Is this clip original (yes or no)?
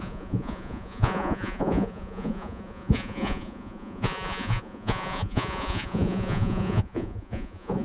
no